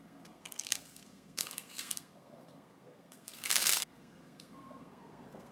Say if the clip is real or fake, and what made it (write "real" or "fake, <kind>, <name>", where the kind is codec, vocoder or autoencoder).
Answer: fake, codec, SNAC